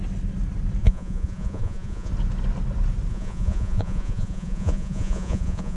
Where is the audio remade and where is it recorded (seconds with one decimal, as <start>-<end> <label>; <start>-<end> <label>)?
0.0-0.8 recorded; 0.8-2.1 remade; 2.1-3.1 recorded; 3.1-5.8 remade